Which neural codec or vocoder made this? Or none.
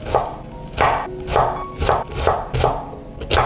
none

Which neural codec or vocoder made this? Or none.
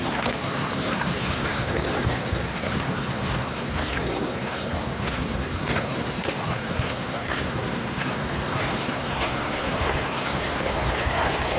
codec, SNAC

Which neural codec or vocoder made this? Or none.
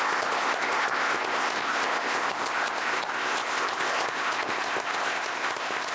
codec, ZipCodec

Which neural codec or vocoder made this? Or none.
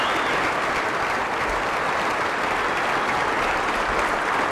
none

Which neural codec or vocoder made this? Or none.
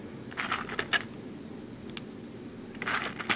none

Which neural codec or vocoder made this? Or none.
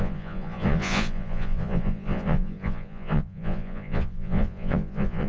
vocoder, Vocos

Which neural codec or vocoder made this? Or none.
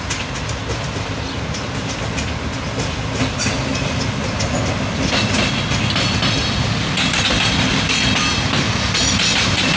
none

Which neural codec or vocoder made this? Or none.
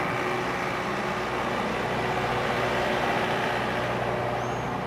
none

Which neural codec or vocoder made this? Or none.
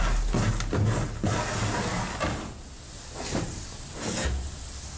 none